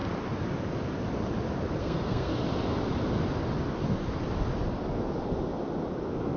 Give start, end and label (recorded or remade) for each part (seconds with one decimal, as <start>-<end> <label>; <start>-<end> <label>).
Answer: 0.0-1.8 recorded; 1.8-2.3 remade; 2.3-6.4 recorded